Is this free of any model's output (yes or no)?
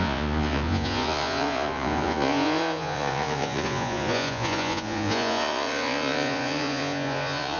no